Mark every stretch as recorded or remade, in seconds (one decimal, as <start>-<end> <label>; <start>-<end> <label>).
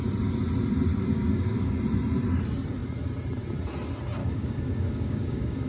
0.0-0.9 recorded; 0.9-1.8 remade; 1.8-4.2 recorded; 4.2-5.7 remade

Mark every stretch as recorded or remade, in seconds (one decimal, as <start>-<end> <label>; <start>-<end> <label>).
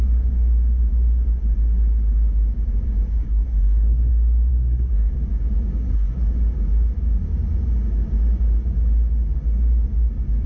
0.0-3.1 recorded; 3.1-4.1 remade; 4.1-4.5 recorded; 4.5-5.1 remade; 5.1-5.8 recorded; 5.8-6.3 remade; 6.3-10.5 recorded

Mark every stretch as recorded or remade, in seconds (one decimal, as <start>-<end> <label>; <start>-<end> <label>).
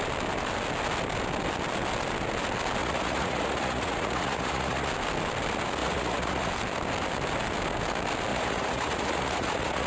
0.0-2.8 recorded; 2.8-4.9 remade; 4.9-5.8 recorded; 5.8-6.5 remade; 6.5-8.3 recorded; 8.3-9.9 remade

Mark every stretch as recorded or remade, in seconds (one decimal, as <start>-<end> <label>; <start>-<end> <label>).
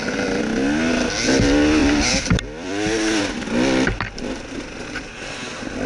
0.0-1.8 recorded; 1.8-3.2 remade; 3.2-5.9 recorded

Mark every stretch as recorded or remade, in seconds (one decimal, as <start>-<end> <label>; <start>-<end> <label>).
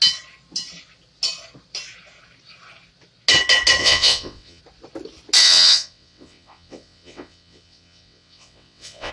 0.0-3.8 recorded; 3.8-4.6 remade; 4.6-5.4 recorded; 5.4-9.1 remade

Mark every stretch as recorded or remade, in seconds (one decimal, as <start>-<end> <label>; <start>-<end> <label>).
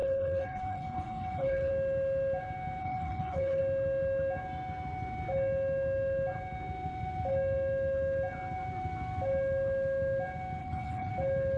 0.0-1.7 remade; 1.7-2.8 recorded; 2.8-3.6 remade; 3.6-10.6 recorded; 10.6-11.1 remade; 11.1-11.6 recorded